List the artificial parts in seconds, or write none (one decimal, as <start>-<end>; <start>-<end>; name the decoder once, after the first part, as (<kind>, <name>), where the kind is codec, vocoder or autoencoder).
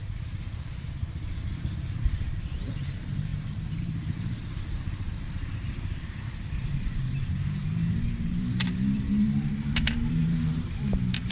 0.0-11.3 (vocoder, BigVGAN v2)